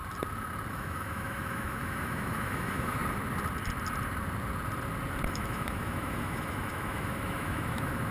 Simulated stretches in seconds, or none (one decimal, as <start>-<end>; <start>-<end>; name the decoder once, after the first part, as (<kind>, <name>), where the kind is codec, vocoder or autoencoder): 0.7-3.0 (autoencoder, DAC-VAE); 5.3-8.1